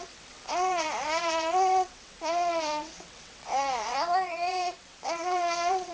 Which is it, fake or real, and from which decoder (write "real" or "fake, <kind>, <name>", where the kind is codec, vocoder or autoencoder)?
fake, vocoder, WaveNeXt